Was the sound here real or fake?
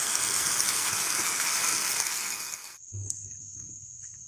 fake